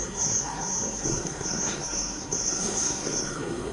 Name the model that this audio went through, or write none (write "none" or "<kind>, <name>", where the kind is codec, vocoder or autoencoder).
codec, SNAC